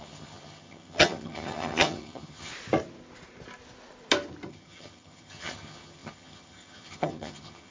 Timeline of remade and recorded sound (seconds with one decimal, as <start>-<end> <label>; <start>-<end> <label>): 0.0-2.5 remade; 2.5-4.5 recorded; 4.5-7.7 remade